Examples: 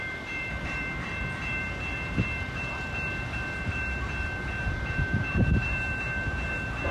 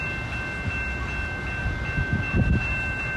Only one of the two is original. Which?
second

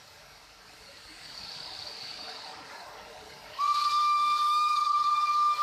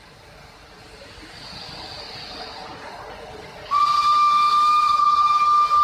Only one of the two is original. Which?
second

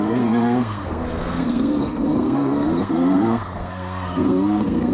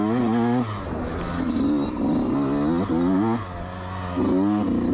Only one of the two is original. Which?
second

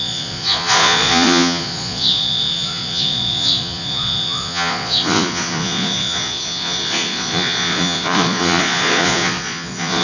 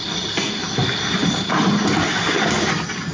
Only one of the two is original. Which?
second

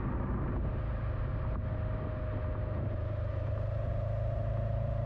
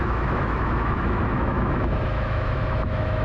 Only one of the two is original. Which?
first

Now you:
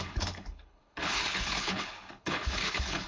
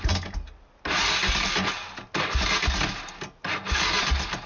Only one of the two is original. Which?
second